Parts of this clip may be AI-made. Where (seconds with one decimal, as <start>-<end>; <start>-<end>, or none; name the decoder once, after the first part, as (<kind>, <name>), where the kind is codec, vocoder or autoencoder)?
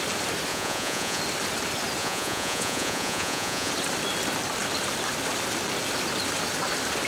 0.5-1.2 (vocoder, Vocos); 2.0-3.7